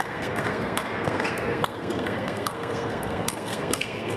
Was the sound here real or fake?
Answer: fake